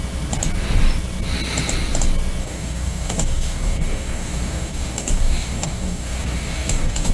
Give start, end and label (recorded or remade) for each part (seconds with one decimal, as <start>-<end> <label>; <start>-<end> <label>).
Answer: 0.0-2.4 recorded; 2.4-7.1 remade